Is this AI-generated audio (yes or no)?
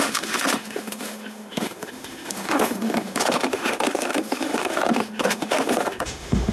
yes